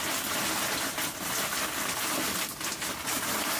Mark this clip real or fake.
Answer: real